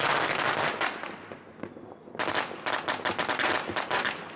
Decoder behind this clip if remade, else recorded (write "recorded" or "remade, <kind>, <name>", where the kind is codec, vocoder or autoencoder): recorded